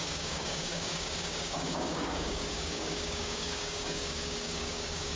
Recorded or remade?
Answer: remade